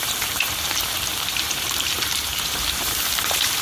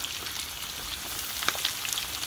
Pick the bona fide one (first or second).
second